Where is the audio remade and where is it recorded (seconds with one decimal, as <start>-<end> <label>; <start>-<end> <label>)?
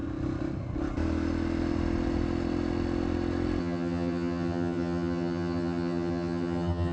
0.0-3.6 recorded; 3.6-6.9 remade